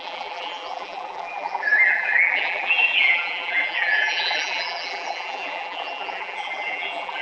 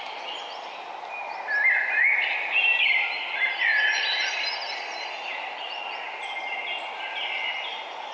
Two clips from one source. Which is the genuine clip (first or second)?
second